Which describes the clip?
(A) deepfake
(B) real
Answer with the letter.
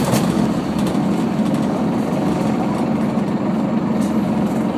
B